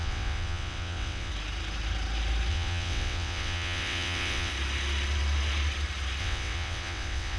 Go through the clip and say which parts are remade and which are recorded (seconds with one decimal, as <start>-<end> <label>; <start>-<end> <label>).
0.0-1.3 remade; 1.3-2.5 recorded; 2.5-4.5 remade; 4.5-6.2 recorded; 6.2-7.4 remade